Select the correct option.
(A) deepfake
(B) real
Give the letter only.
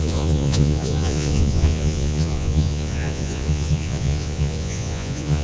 A